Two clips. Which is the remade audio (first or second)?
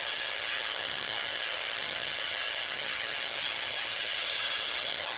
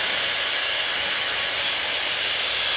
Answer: first